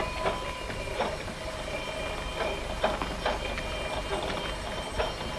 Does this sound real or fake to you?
real